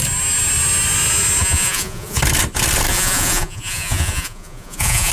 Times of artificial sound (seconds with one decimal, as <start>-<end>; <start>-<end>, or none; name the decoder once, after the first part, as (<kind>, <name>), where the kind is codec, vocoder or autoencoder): 1.4-2.2 (vocoder, Vocos); 2.9-5.1